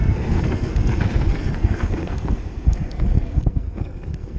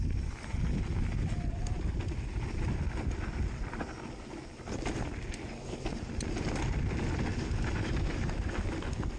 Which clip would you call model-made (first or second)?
first